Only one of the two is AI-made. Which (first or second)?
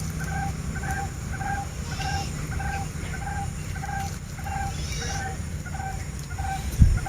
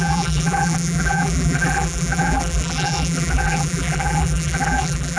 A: second